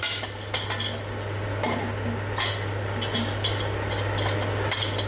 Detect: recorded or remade recorded